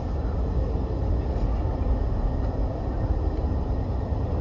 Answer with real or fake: real